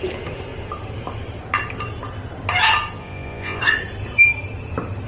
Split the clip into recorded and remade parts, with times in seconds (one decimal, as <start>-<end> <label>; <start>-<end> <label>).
0.0-3.0 recorded; 3.0-3.6 remade; 3.6-5.1 recorded